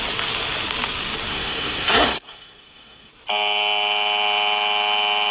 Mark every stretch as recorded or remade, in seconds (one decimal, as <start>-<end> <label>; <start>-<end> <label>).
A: 0.0-1.3 recorded; 1.3-3.1 remade; 3.1-5.3 recorded